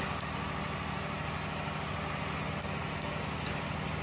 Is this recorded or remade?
recorded